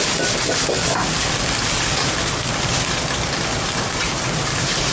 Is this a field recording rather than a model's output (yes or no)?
no